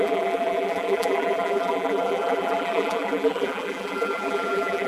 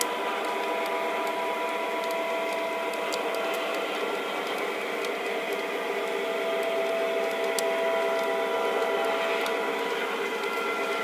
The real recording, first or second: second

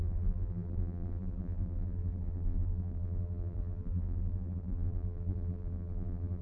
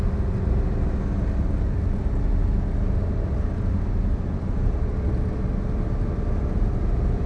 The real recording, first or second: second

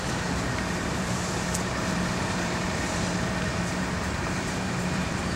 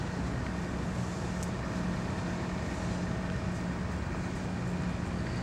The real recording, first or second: second